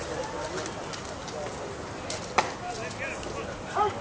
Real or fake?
real